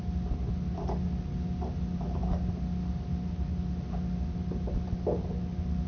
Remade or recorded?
recorded